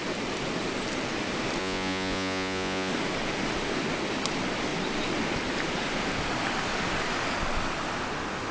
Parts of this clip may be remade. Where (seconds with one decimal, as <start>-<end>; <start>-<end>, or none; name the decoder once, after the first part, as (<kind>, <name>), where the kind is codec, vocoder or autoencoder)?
1.6-2.9 (vocoder, Vocos)